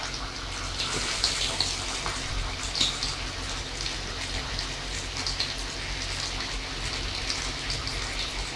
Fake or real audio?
real